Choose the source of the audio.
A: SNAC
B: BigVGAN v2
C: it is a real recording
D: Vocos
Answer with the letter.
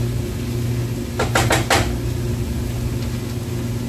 C